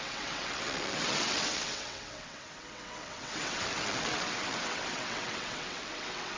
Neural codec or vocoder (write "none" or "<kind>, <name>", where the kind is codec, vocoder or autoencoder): vocoder, WaveNeXt